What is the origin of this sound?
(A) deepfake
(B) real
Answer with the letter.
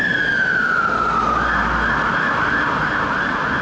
B